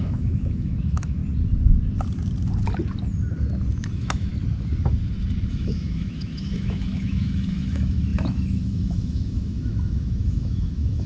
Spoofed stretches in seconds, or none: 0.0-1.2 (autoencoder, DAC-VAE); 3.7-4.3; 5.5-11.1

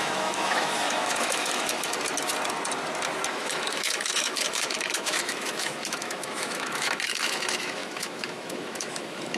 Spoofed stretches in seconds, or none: 0.0-1.9 (autoencoder, DAC-VAE); 3.3-9.4

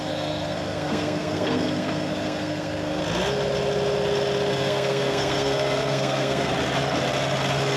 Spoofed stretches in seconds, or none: 0.0-3.0 (codec, SNAC); 4.5-6.5

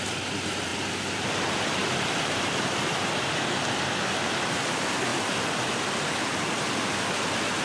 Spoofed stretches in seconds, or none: none

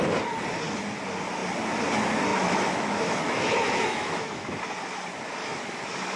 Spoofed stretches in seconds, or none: 2.3-4.6 (autoencoder, DAC-VAE); 5.4-6.2